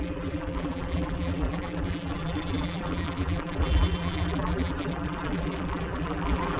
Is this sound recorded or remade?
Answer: remade